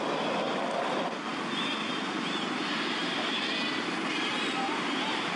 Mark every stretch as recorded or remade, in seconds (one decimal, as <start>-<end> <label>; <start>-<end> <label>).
0.0-5.4 recorded